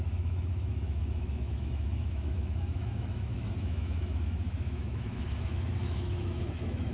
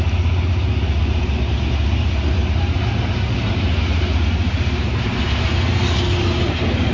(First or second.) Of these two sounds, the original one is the second